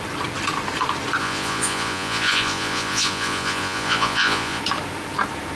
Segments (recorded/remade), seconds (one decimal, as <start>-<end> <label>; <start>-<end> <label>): 0.0-1.2 recorded; 1.2-4.6 remade; 4.6-5.6 recorded